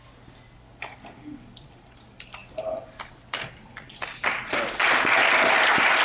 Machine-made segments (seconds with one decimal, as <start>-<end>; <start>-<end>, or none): none